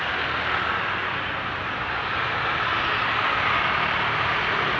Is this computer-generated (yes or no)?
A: no